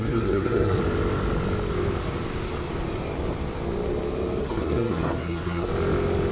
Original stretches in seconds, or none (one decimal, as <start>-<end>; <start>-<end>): 0.8-4.4; 5.7-6.3

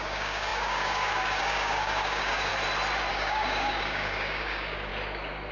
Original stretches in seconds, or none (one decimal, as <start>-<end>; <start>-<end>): 2.5-3.1; 4.9-5.5

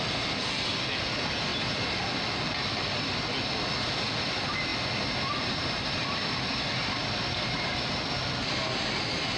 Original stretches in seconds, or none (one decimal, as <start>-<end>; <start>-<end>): 0.0-1.5; 2.0-9.4

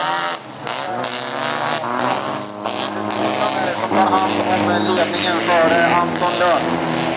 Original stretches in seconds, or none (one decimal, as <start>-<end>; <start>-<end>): 0.0-7.2

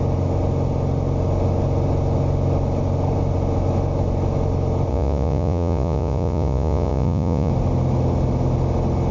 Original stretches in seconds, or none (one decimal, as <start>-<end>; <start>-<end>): 0.0-4.9; 7.5-9.1

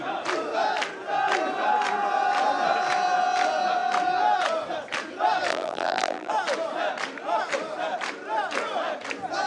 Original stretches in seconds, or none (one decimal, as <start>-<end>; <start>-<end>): 0.0-5.5; 6.3-9.5